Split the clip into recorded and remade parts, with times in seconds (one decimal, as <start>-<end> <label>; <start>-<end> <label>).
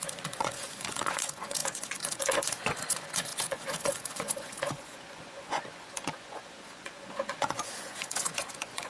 0.0-8.9 remade